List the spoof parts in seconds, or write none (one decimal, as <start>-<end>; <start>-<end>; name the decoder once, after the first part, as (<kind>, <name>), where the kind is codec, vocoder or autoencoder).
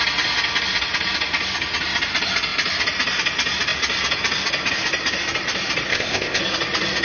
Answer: 5.9-6.4 (codec, ZipCodec)